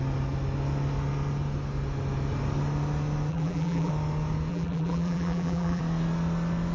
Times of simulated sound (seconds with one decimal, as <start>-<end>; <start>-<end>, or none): 3.3-3.9; 4.5-5.8

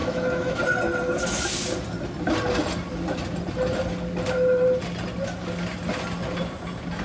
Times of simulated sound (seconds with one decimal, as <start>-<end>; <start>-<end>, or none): 0.0-0.6

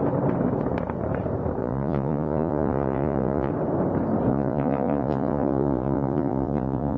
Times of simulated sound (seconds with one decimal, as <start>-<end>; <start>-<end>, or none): 1.6-3.5; 4.3-7.0

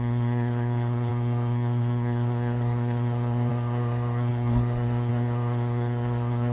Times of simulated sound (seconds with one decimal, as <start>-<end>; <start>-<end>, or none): 0.0-6.5

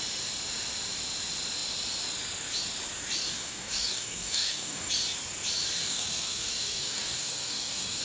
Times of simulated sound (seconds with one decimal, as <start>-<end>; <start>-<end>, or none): 3.2-4.9; 5.8-8.0

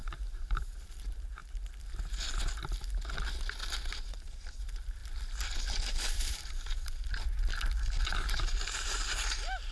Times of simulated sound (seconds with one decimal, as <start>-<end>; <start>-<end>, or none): 0.0-1.4; 4.1-5.0; 5.9-7.5; 8.0-9.7